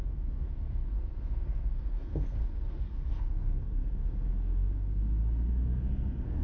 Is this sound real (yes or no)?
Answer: no